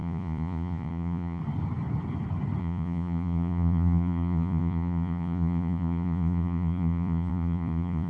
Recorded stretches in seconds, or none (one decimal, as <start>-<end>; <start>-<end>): 1.4-2.6